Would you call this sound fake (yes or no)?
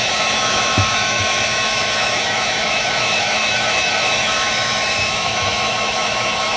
yes